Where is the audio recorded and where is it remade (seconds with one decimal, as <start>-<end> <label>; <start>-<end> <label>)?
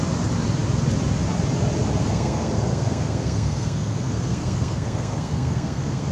0.0-2.0 recorded; 2.0-6.1 remade